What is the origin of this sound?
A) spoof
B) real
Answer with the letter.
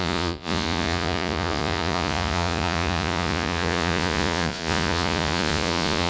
A